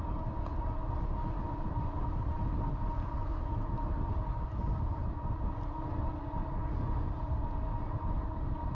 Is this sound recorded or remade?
recorded